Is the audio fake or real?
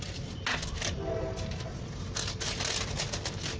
real